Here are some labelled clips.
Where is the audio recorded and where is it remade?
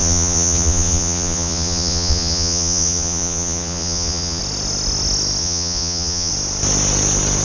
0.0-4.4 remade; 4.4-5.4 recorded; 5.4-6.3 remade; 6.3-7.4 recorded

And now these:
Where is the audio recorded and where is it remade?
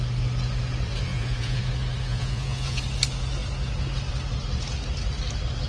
0.0-1.1 recorded; 1.1-1.6 remade; 1.6-2.1 recorded; 2.1-2.8 remade; 2.8-5.7 recorded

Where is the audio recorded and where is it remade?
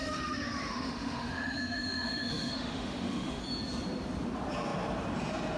0.0-3.4 remade; 3.4-5.6 recorded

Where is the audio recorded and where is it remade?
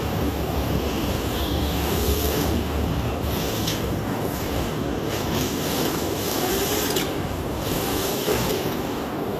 0.0-6.5 remade; 6.5-7.1 recorded; 7.1-9.4 remade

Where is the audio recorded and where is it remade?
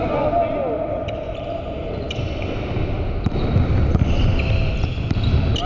0.0-1.0 recorded; 1.0-2.3 remade; 2.3-5.7 recorded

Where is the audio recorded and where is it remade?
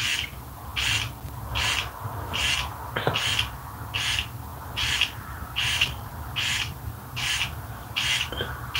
0.0-4.5 recorded; 4.5-8.3 remade; 8.3-8.8 recorded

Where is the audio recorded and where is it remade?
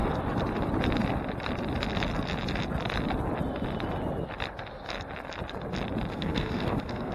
0.0-6.1 recorded; 6.1-7.1 remade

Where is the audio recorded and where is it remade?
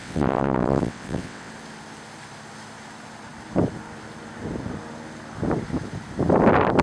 0.0-1.5 remade; 1.5-6.8 recorded